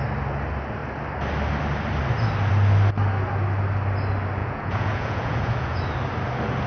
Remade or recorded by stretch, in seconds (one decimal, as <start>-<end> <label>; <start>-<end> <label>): 0.0-4.4 recorded; 4.4-5.8 remade; 5.8-6.7 recorded